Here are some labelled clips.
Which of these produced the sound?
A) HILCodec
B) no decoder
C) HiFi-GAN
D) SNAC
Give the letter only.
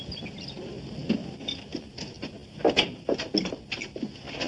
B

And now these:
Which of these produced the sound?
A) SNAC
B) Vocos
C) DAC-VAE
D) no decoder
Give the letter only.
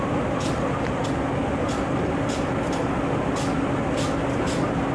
D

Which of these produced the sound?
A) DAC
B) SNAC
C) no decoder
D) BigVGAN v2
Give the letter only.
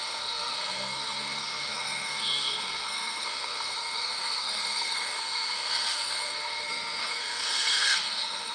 B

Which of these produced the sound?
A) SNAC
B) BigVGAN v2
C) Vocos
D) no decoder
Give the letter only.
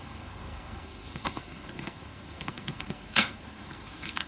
A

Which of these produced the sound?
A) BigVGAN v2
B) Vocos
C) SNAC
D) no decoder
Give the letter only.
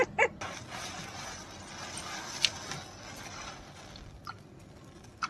D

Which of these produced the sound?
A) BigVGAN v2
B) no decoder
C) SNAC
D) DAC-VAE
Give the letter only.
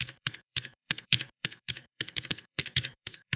C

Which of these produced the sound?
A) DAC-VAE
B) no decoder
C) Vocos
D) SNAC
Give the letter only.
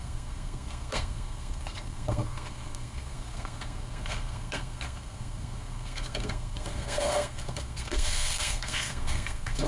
D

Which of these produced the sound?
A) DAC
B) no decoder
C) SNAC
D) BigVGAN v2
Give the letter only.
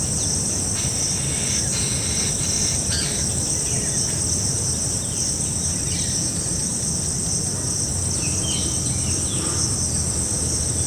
B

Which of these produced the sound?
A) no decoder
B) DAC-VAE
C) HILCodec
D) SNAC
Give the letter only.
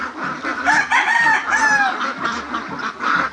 A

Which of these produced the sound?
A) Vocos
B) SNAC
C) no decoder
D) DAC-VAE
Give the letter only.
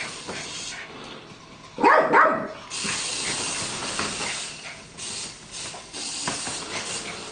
C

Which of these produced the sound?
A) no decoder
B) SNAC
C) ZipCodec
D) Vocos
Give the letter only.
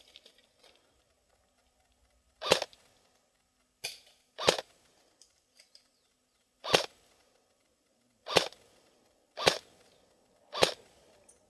A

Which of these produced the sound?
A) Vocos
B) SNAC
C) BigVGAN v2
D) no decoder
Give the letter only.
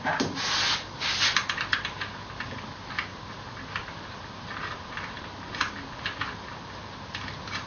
D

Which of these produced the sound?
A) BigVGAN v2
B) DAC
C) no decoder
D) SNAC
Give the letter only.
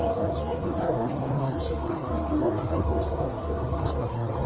D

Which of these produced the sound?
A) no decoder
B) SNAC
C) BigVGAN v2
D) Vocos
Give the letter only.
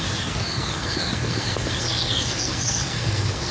B